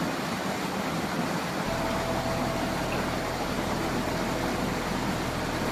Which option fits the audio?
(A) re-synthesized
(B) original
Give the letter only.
B